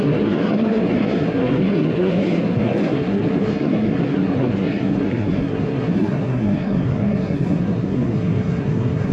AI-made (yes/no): yes